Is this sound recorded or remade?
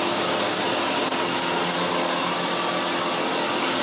recorded